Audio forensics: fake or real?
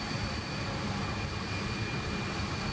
real